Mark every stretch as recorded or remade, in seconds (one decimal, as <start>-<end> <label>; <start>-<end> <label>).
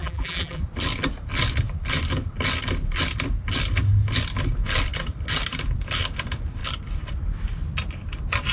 0.0-0.6 remade; 0.6-8.5 recorded